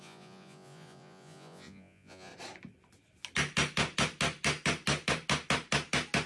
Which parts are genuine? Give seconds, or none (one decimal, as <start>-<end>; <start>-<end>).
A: 2.3-6.3